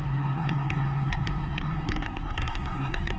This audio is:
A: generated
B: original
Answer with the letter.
A